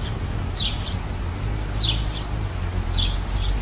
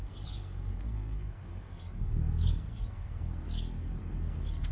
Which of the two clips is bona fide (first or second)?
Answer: first